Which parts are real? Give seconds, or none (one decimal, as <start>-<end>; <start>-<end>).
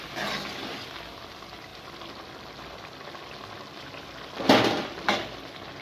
0.0-5.8